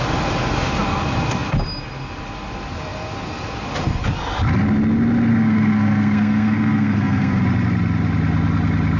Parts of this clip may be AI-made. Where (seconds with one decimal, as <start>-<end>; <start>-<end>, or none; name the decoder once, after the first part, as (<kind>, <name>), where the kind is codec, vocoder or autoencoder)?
5.3-7.4 (codec, SNAC)